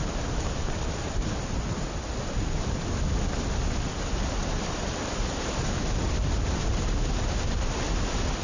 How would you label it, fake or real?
real